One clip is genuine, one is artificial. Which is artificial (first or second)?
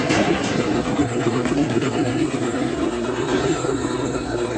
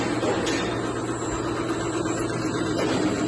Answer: first